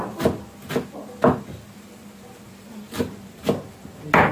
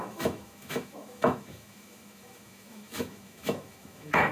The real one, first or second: first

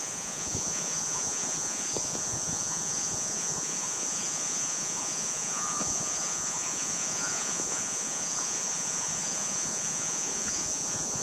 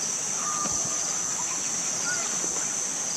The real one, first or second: second